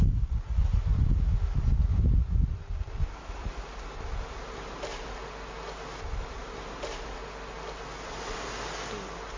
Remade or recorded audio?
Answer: recorded